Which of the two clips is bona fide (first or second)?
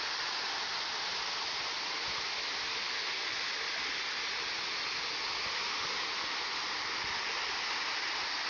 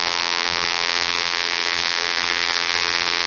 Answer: first